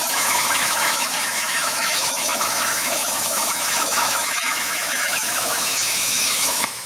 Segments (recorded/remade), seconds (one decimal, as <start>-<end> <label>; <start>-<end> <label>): 0.0-6.9 remade

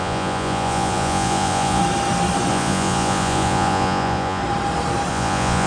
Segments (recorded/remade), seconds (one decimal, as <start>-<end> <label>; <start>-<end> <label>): 0.0-1.8 remade; 1.8-2.5 recorded; 2.5-4.4 remade; 4.4-5.1 recorded; 5.1-5.7 remade

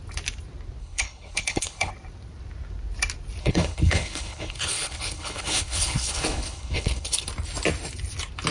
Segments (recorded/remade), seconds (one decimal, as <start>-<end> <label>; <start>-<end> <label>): 0.0-0.8 recorded; 0.8-1.9 remade; 1.9-3.4 recorded; 3.4-7.3 remade; 7.3-8.5 recorded